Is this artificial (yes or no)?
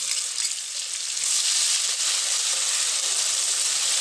no